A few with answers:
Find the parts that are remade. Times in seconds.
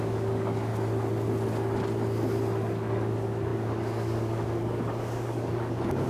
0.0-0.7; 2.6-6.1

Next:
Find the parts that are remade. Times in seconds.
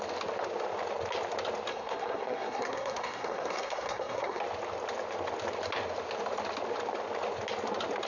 1.7-4.4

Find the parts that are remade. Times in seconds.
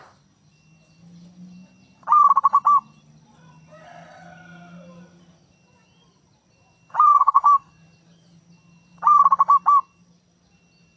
7.1-7.7